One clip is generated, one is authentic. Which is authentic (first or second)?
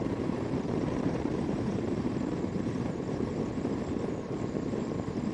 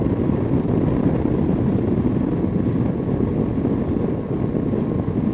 second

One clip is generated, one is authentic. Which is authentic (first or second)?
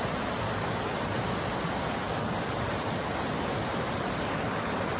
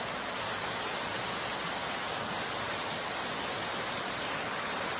second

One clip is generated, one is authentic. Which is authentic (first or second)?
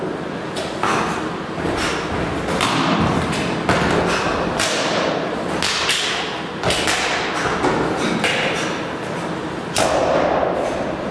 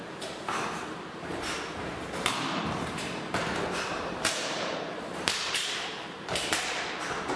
first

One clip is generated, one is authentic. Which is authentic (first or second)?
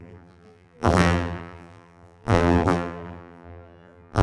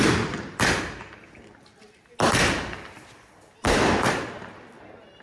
second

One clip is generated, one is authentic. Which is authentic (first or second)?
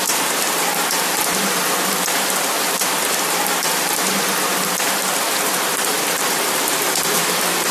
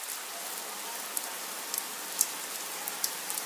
second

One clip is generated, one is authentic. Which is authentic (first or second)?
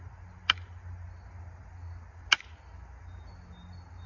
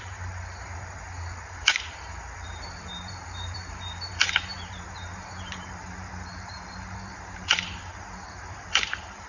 first